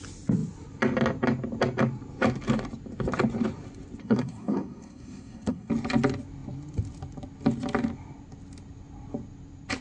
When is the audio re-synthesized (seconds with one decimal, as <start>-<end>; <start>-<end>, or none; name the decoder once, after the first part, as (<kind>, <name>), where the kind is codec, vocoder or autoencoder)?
4.0-5.7 (codec, SNAC)